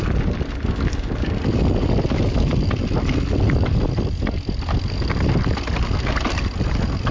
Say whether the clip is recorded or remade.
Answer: recorded